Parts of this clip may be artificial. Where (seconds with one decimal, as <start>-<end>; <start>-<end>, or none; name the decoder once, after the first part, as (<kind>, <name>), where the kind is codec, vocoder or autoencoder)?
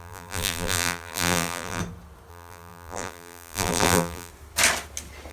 0.0-1.8 (vocoder, BigVGAN v2); 2.3-4.3